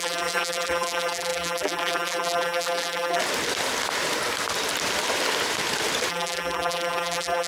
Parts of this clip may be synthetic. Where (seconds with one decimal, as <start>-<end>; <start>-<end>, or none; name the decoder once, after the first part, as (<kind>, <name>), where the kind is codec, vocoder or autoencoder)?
0.0-3.2 (vocoder, BigVGAN v2); 6.1-7.5